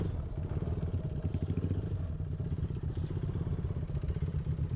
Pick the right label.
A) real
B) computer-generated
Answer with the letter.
A